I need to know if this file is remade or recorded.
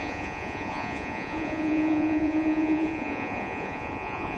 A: remade